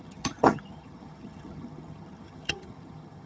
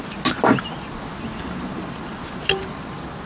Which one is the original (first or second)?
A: second